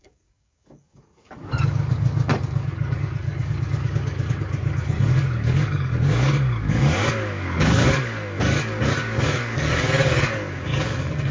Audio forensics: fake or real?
fake